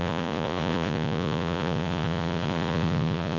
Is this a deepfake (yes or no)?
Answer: yes